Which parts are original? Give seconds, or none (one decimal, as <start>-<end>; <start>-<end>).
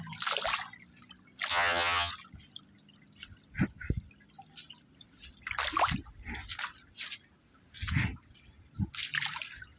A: 0.0-1.5; 2.1-9.8